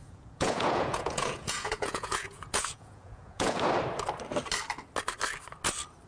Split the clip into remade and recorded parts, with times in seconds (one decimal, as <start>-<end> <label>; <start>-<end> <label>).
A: 0.0-3.7 remade; 3.7-6.1 recorded